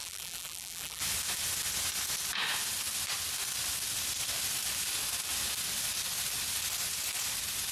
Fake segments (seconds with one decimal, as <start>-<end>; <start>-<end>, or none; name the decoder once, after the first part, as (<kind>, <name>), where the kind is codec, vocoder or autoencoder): 0.0-1.0 (vocoder, BigVGAN v2)